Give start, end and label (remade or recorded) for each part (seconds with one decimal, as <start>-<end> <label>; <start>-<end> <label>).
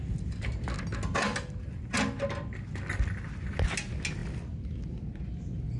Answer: 0.0-5.8 recorded